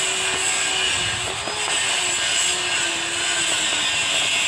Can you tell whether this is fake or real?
real